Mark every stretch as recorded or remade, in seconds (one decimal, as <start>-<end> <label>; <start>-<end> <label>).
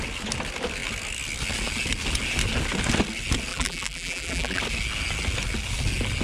0.0-3.5 recorded; 3.5-4.6 remade; 4.6-6.2 recorded